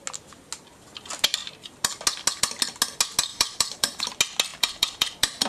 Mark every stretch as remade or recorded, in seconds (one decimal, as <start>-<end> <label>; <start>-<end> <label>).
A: 0.0-3.3 recorded; 3.3-4.0 remade; 4.0-4.5 recorded; 4.5-5.5 remade